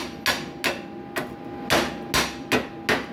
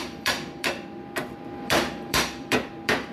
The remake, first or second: second